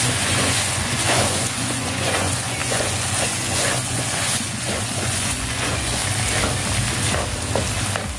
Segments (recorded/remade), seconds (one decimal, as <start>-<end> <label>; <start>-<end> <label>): 0.0-6.0 remade; 6.0-8.2 recorded